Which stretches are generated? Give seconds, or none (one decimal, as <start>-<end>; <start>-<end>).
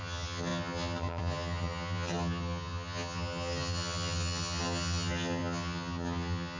0.0-6.6